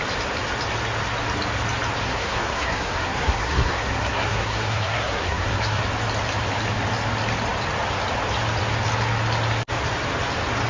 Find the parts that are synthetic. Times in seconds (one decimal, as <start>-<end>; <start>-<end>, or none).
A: 2.0-5.8